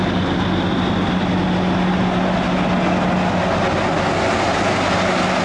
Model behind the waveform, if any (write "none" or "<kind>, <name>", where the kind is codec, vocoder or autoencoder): none